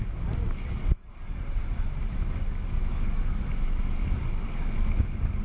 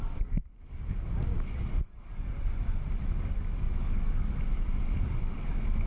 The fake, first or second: second